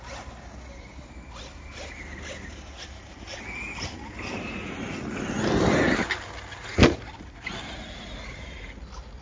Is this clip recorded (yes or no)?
yes